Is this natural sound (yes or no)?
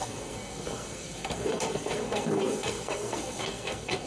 no